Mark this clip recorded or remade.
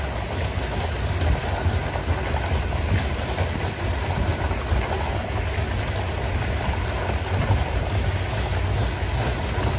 recorded